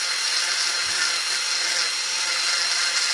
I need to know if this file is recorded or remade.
recorded